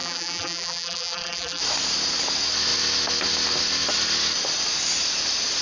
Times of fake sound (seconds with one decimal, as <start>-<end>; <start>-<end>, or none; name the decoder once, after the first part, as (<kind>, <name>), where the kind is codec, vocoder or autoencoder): 0.0-1.6 (vocoder, BigVGAN v2)